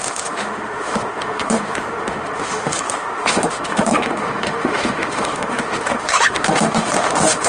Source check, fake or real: fake